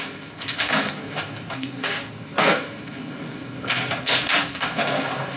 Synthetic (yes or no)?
yes